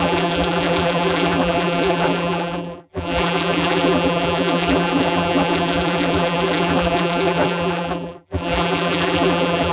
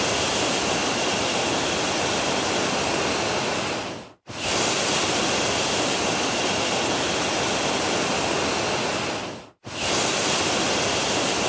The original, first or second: second